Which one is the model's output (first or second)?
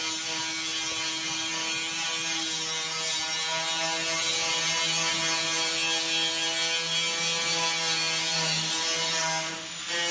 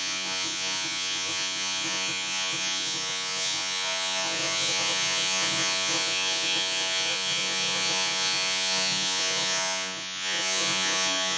second